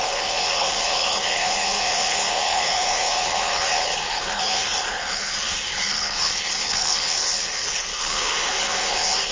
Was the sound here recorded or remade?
remade